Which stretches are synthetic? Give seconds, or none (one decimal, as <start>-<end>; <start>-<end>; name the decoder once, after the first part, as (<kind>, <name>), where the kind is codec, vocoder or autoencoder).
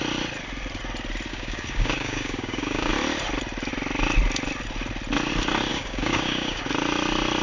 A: 1.3-2.9 (codec, DAC); 5.7-6.6